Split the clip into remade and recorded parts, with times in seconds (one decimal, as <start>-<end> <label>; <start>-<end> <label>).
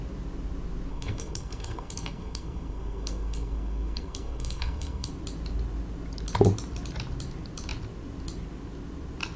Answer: 0.0-0.9 recorded; 0.9-5.1 remade; 5.1-9.4 recorded